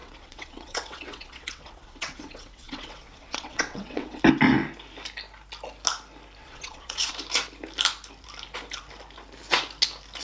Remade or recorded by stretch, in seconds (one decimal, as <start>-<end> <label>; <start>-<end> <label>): 0.0-4.2 remade; 4.2-6.4 recorded; 6.4-7.1 remade; 7.1-10.2 recorded